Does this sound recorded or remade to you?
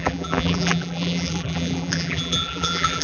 remade